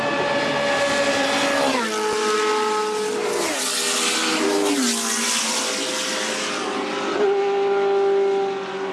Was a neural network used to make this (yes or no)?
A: no